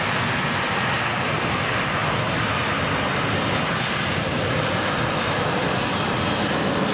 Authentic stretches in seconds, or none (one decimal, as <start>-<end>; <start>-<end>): 0.0-6.9